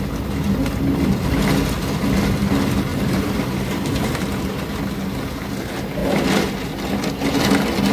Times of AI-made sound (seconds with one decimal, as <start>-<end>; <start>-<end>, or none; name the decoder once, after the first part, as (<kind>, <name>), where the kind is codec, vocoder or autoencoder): 2.9-4.8 (vocoder, BigVGAN v2)